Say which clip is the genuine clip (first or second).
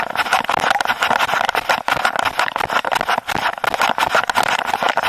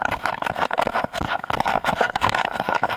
first